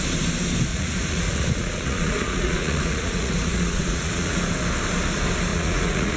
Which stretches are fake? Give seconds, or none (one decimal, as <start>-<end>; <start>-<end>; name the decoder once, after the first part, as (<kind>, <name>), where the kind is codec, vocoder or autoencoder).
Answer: 0.7-4.4 (vocoder, Vocos); 5.5-6.2

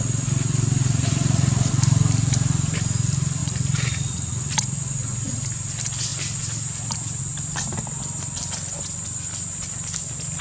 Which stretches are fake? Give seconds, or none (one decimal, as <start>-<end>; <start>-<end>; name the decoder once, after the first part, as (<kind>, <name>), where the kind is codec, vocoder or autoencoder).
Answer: 0.8-1.7 (vocoder, Vocos); 3.4-5.3

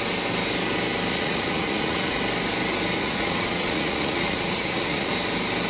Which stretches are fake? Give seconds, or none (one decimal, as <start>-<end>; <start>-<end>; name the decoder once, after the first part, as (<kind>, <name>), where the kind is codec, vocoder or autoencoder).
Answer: 1.1-2.2 (vocoder, Vocos); 3.0-5.1

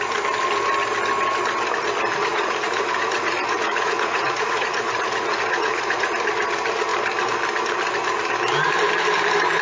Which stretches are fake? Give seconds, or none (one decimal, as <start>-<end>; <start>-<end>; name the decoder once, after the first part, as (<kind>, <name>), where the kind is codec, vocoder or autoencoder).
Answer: 2.3-6.1 (vocoder, Vocos)

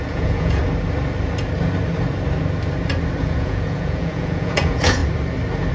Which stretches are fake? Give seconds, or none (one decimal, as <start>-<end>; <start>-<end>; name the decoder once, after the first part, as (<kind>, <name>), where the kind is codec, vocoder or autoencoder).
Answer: 0.0-0.6 (vocoder, Vocos); 3.2-5.0

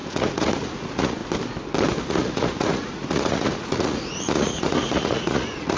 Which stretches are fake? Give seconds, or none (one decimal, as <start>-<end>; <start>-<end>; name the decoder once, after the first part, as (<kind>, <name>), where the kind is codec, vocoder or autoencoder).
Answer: 0.0-1.2 (vocoder, Vocos); 2.1-5.8